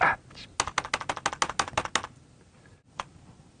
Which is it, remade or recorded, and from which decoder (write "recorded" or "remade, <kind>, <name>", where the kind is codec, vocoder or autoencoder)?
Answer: recorded